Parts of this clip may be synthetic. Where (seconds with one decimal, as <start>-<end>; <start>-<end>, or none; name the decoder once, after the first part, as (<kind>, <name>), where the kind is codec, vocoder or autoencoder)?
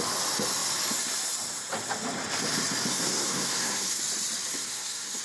2.9-4.0 (codec, SNAC); 4.5-5.2